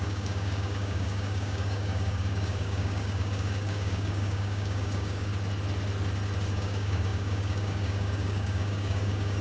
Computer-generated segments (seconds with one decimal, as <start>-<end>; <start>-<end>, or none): 0.0-5.3; 6.5-9.4